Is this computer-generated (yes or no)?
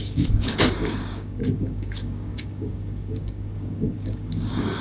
yes